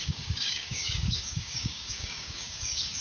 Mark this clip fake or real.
fake